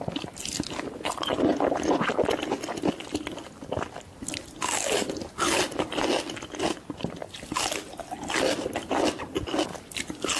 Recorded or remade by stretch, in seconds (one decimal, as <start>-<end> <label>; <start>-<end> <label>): 0.0-10.4 recorded